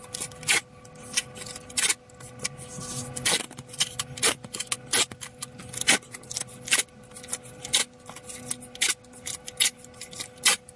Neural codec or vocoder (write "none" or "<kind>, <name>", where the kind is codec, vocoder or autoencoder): none